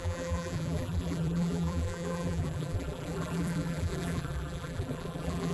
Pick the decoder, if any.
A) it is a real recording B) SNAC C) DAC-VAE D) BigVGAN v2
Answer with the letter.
D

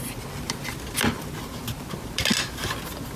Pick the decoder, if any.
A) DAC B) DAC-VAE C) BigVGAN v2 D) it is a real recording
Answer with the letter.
D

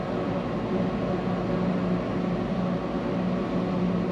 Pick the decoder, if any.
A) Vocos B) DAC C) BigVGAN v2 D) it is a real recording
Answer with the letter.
D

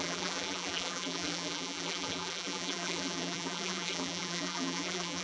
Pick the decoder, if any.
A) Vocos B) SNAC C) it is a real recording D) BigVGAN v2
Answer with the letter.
D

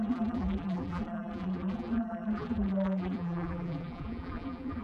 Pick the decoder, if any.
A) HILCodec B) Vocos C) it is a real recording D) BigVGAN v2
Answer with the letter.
D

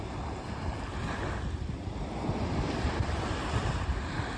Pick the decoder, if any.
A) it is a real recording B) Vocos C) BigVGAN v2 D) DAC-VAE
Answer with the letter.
A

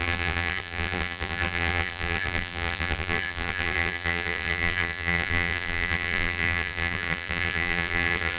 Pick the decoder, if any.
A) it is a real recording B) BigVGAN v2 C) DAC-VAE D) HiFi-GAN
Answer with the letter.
B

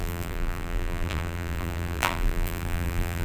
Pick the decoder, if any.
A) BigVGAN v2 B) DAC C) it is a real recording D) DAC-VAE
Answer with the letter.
A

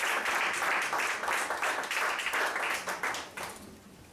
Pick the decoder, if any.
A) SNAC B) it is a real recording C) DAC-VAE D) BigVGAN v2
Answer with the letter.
D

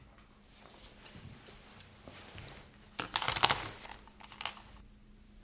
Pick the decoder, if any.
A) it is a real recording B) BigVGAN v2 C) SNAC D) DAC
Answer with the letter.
A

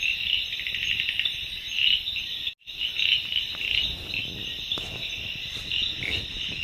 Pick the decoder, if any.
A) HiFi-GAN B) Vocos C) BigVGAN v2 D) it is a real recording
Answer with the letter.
D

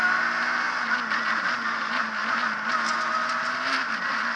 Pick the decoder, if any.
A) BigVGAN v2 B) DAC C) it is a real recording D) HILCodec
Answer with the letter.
C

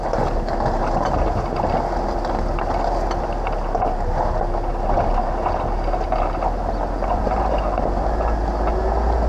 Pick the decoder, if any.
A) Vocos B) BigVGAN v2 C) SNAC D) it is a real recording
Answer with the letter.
D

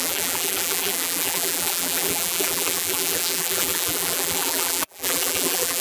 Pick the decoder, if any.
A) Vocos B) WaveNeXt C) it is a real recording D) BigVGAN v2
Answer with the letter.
D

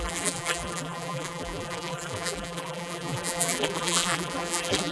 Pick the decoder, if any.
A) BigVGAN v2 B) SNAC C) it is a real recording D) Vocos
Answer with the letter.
A